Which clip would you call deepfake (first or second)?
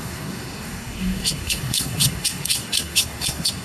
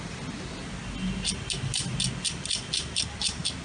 first